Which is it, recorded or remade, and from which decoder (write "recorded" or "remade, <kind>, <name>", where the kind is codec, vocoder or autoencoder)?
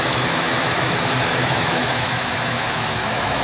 remade, autoencoder, DAC-VAE